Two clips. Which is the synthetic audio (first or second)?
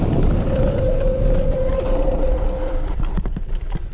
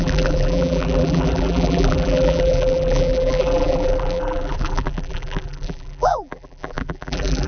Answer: second